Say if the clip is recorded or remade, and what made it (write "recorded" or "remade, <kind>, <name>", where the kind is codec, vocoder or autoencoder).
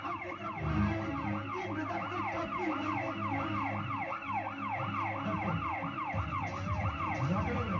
recorded